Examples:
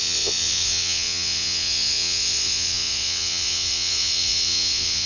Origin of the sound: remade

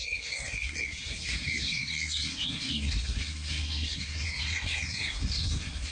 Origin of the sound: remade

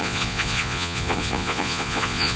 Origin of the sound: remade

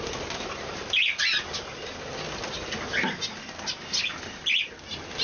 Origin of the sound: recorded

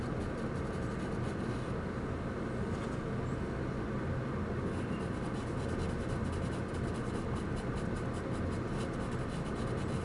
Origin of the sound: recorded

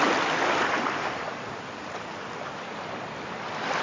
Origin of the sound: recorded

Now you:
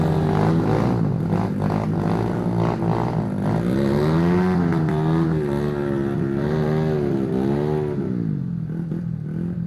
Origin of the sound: recorded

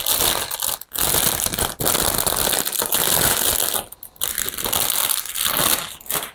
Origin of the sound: recorded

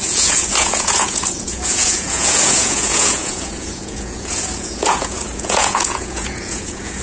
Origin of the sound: remade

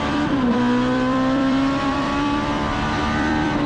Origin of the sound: remade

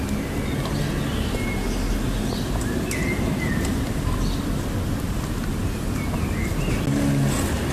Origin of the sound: recorded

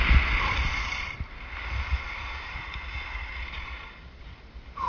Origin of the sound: recorded